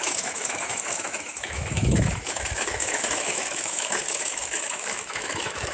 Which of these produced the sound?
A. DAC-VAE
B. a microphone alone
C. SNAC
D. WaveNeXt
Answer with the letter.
A